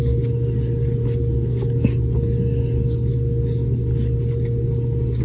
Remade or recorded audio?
recorded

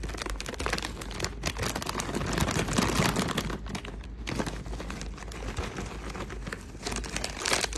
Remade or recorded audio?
recorded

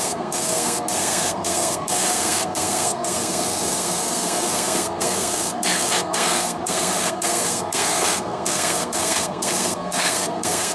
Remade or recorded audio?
remade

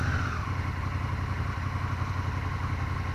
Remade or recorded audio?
recorded